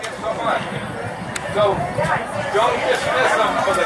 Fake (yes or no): no